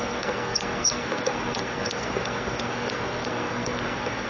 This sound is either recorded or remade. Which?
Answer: remade